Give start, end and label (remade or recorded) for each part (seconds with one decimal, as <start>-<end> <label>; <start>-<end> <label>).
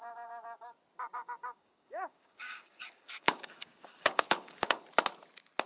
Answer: 0.0-1.4 recorded; 1.4-4.8 remade; 4.8-5.7 recorded